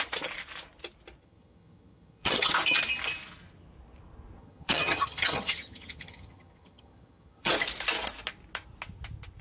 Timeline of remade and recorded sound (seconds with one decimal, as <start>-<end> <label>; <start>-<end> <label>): 0.0-1.2 recorded; 1.2-2.5 remade; 2.5-4.4 recorded; 4.4-7.5 remade; 7.5-9.4 recorded